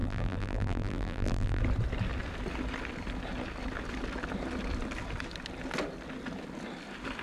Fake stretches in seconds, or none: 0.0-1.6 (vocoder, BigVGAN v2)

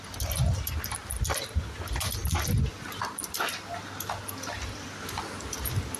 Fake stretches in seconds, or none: none